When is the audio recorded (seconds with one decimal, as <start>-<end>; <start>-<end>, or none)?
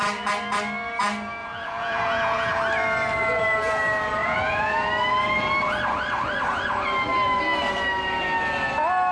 0.0-1.4; 2.6-4.2; 4.9-9.1